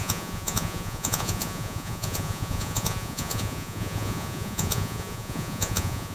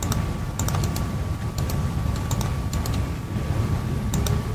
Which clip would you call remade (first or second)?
first